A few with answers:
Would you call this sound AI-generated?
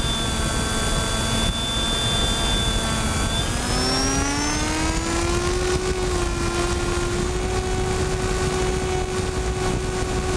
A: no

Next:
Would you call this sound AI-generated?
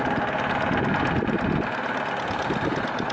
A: no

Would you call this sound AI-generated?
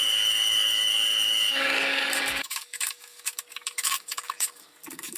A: yes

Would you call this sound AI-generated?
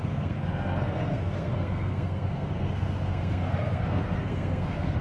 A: yes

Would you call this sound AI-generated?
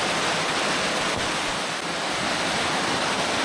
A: no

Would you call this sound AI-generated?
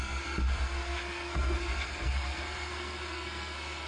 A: yes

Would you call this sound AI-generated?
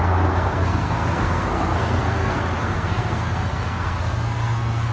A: yes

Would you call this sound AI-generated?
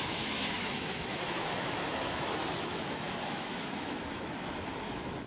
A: yes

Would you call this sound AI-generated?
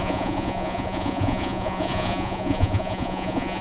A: yes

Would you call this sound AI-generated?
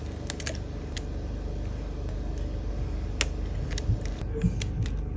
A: no